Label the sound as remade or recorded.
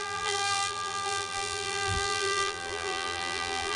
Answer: remade